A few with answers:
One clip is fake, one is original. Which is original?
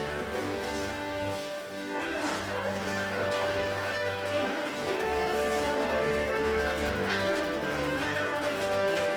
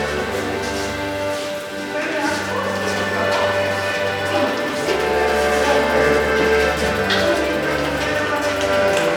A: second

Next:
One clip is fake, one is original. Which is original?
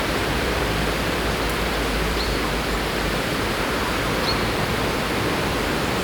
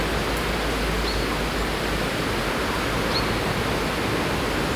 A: second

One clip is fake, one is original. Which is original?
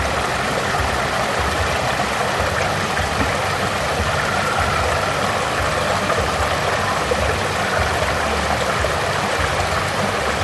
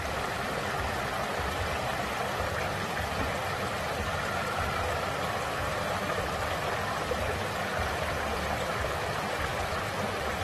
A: first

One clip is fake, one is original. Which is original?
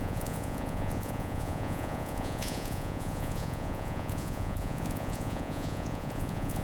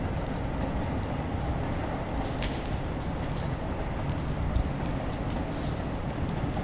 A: second